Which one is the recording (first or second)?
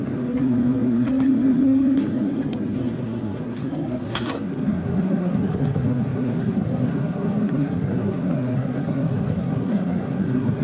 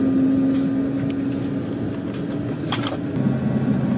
second